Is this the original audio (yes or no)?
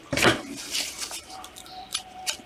no